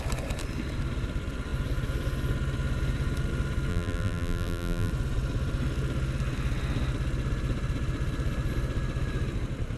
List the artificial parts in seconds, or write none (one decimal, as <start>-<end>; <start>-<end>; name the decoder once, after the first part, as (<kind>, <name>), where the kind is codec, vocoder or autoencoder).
3.7-4.9 (vocoder, BigVGAN v2)